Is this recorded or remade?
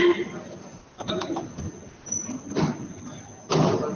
recorded